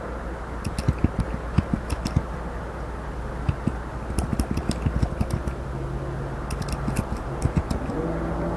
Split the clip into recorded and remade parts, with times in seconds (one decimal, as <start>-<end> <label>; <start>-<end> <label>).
0.0-8.6 recorded